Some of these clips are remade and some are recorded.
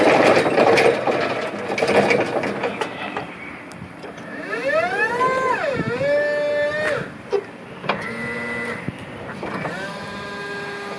recorded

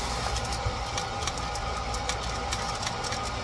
recorded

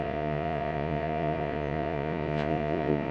remade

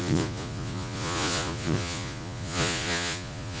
remade